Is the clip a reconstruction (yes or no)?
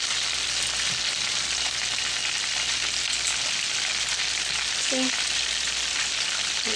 no